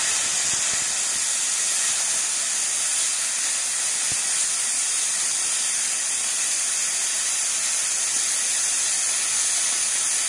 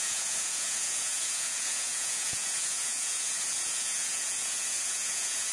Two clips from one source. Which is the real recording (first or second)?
first